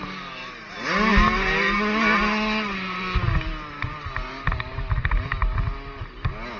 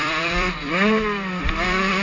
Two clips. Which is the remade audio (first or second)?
second